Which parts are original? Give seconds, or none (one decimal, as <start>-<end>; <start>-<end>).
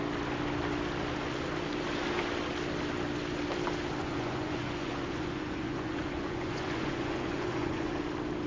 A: 0.0-4.0; 7.9-8.5